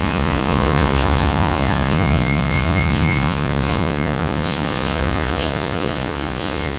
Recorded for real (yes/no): no